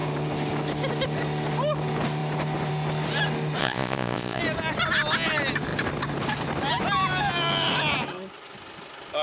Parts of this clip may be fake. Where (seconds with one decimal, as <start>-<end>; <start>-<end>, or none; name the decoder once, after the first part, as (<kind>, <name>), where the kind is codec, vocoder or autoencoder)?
3.6-4.4 (vocoder, Vocos)